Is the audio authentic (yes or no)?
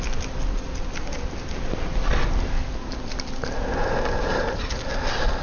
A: yes